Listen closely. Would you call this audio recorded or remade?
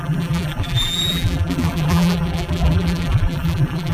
remade